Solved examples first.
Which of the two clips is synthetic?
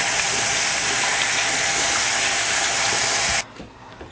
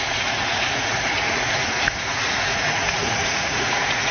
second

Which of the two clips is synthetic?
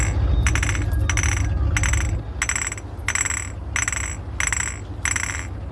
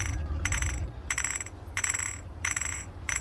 second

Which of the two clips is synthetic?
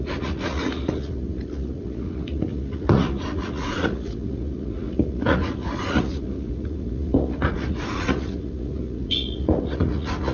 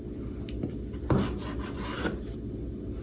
first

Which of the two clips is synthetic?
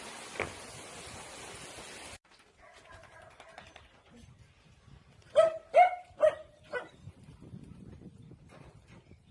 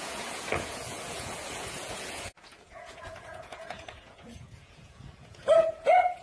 second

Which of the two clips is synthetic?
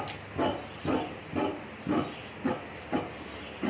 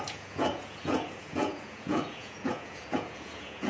second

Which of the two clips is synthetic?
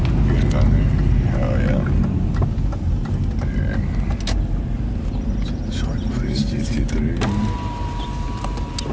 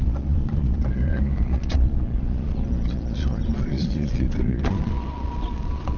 second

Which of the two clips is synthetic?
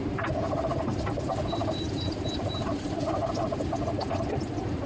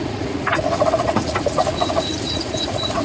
second